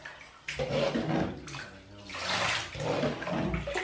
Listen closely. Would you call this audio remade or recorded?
recorded